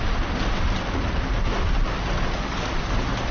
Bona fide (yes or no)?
yes